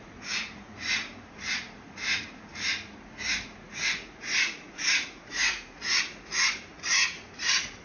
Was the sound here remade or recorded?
remade